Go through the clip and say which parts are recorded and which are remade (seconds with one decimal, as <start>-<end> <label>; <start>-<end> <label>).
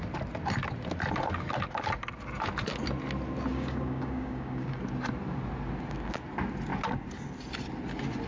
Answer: 0.0-3.5 recorded; 3.5-4.8 remade; 4.8-8.3 recorded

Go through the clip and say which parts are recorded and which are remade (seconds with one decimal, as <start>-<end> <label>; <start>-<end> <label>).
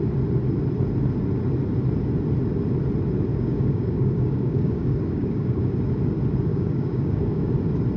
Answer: 0.0-3.3 recorded; 3.3-5.7 remade; 5.7-6.5 recorded; 6.5-7.5 remade; 7.5-8.0 recorded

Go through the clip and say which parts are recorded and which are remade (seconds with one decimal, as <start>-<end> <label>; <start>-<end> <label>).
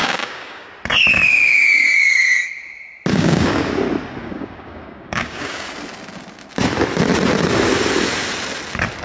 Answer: 0.0-0.7 remade; 0.7-1.1 recorded; 1.1-2.2 remade; 2.2-3.1 recorded; 3.1-3.7 remade; 3.7-4.2 recorded; 4.2-5.7 remade; 5.7-9.0 recorded